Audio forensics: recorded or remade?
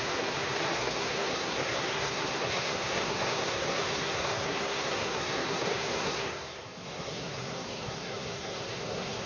remade